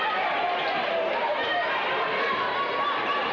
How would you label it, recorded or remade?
recorded